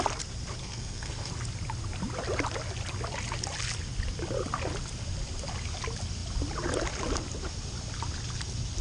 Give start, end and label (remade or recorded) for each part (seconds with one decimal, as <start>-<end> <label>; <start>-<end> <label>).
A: 0.0-0.6 recorded; 0.6-1.3 remade; 1.3-8.8 recorded